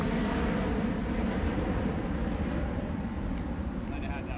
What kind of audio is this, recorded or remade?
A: recorded